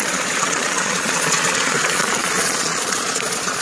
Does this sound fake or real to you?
fake